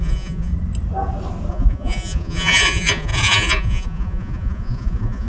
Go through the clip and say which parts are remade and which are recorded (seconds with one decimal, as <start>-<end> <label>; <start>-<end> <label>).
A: 0.0-0.5 remade; 0.5-1.5 recorded; 1.5-5.3 remade